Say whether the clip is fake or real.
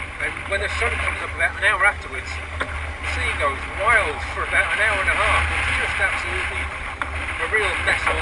real